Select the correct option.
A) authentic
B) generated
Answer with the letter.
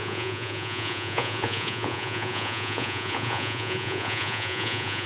B